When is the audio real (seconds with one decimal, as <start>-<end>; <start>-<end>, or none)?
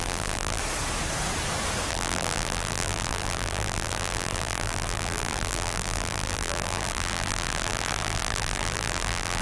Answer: 0.6-1.9